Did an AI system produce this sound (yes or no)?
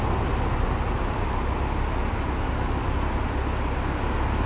no